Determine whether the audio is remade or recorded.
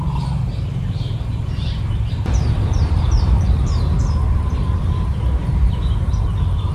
remade